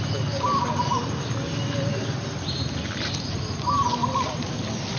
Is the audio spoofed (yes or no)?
no